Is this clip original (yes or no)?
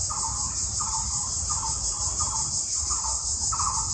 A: no